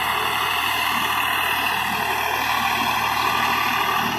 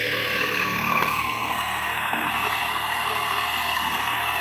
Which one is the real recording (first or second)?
first